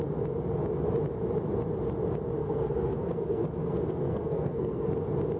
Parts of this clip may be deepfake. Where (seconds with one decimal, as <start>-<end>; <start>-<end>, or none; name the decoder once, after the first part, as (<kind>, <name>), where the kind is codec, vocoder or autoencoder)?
2.4-4.9 (codec, SNAC)